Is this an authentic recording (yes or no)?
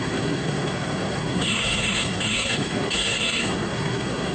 no